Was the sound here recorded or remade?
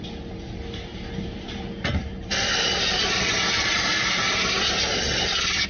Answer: recorded